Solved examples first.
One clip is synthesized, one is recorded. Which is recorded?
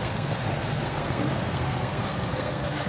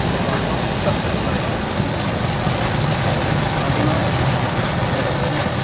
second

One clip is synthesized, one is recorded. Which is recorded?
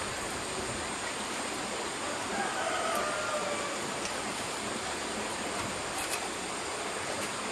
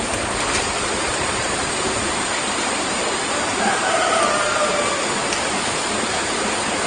first